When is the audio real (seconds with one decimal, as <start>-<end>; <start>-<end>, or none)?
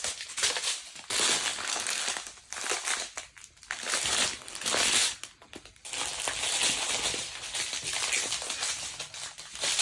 0.0-1.5; 2.0-9.8